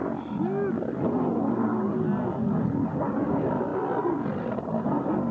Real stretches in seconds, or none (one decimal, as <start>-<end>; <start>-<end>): 0.0-5.3